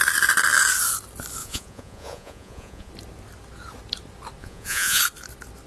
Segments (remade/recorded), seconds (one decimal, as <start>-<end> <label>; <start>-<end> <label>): 0.0-1.4 recorded; 1.4-2.9 remade; 2.9-4.4 recorded; 4.4-5.0 remade; 5.0-5.7 recorded